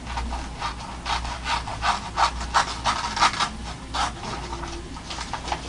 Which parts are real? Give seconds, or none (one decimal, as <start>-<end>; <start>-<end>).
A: 0.0-5.7

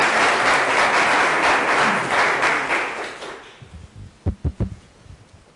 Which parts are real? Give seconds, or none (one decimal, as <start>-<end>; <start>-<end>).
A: 0.0-4.5; 5.0-5.6

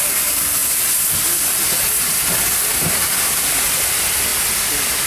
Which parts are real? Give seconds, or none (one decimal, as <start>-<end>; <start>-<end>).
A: 0.0-5.1

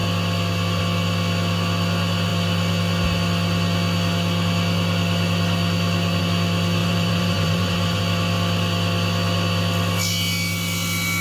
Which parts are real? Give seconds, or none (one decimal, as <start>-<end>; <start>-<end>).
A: 0.0-6.8; 8.0-11.2